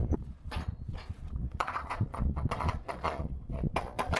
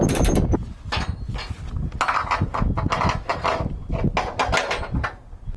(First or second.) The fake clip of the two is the first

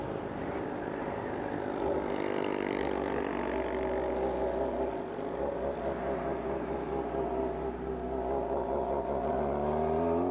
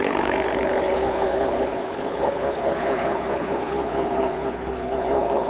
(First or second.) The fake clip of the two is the second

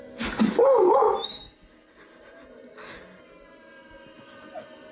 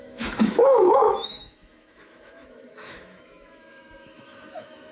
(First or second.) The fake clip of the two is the second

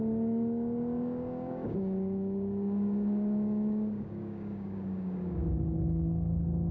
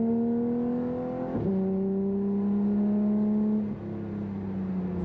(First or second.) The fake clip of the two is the first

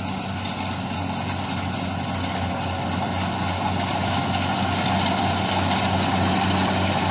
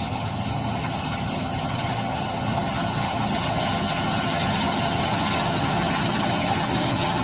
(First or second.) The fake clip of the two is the second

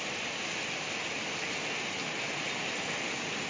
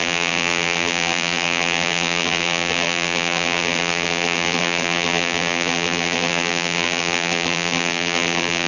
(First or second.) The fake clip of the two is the second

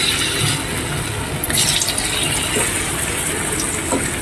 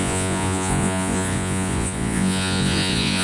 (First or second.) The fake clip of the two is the second